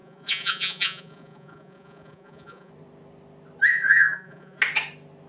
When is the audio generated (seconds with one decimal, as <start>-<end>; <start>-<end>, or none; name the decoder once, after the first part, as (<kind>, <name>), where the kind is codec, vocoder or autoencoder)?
0.0-2.7 (vocoder, Vocos); 3.7-4.6

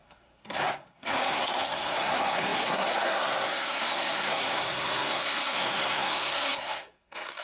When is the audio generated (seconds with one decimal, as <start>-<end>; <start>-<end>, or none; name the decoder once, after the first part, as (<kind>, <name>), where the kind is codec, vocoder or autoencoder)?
0.0-7.4 (codec, SNAC)